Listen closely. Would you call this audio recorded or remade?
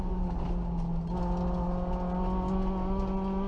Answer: recorded